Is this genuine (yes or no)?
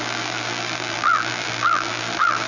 no